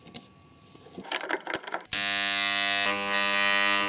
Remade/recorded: recorded